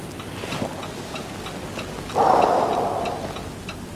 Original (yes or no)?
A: yes